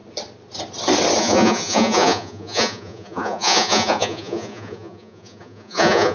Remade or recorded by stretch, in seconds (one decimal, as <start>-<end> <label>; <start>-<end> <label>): 0.0-1.2 recorded; 1.2-6.1 remade